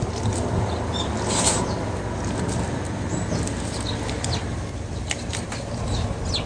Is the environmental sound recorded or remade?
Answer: recorded